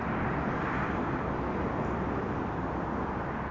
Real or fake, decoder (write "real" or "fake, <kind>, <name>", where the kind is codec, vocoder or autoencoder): real